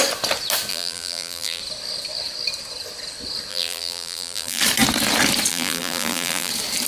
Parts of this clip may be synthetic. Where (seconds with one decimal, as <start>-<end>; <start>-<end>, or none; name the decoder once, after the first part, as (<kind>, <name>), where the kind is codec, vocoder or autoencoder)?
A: 0.7-1.6 (vocoder, BigVGAN v2); 3.5-4.6; 5.5-6.5